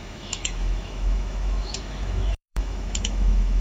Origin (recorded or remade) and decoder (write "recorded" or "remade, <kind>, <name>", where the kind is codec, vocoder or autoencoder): remade, autoencoder, DAC-VAE